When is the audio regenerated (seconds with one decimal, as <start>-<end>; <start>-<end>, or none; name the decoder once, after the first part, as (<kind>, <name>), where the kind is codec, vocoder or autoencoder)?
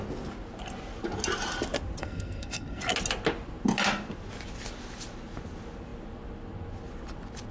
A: 2.0-2.8 (codec, SNAC)